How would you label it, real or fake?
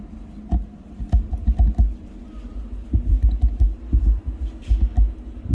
real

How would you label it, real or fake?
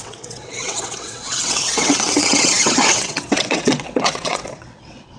fake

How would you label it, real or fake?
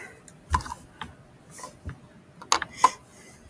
real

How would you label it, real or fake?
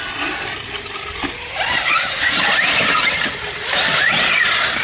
real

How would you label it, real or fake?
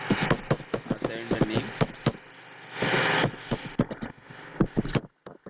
real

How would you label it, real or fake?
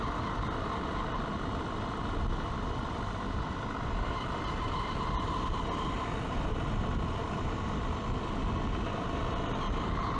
real